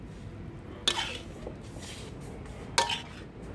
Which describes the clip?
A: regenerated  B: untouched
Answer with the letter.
B